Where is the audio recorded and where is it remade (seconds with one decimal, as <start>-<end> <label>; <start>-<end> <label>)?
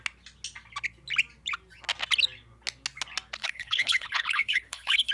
0.0-3.4 recorded; 3.4-5.1 remade